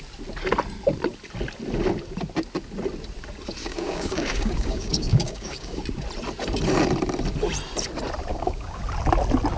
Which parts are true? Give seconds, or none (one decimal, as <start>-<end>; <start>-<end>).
0.0-3.6; 5.8-8.3; 8.8-9.6

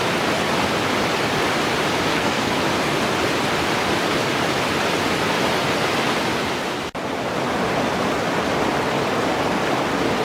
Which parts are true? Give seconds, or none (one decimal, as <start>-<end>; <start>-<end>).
0.0-2.1; 2.6-10.2

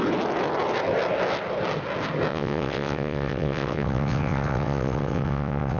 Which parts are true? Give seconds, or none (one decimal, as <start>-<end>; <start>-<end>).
0.0-2.3